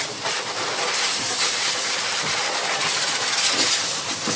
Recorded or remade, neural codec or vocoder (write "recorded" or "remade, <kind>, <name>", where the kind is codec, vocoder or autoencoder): remade, vocoder, BigVGAN v2